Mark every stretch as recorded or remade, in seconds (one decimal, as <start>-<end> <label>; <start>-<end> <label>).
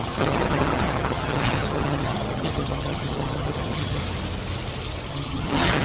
0.0-4.0 remade; 4.0-5.1 recorded; 5.1-5.8 remade